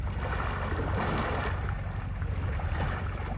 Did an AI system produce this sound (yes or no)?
no